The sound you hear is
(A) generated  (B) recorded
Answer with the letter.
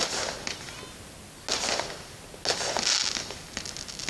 B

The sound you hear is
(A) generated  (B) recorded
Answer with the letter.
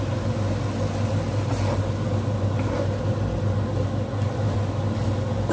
B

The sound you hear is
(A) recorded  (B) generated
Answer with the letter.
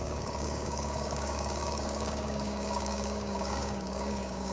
B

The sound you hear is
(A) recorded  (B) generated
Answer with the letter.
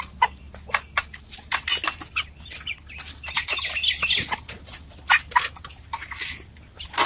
A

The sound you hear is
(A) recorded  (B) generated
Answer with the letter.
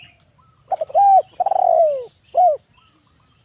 A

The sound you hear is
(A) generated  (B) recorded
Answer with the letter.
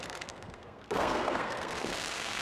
A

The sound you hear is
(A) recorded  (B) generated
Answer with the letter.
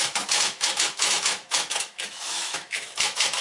B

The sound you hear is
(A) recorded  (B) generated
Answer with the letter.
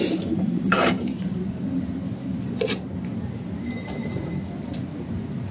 B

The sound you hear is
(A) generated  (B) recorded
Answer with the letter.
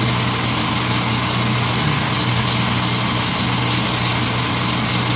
B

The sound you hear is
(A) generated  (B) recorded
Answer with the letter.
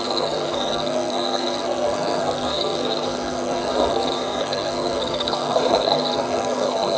A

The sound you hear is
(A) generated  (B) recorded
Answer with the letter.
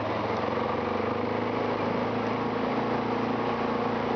B